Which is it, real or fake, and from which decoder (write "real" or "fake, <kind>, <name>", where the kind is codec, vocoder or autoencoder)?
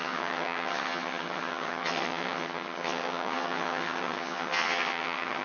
fake, vocoder, HiFi-GAN